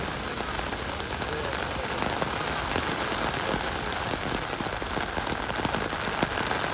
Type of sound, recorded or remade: recorded